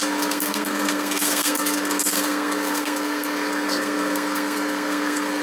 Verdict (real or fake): fake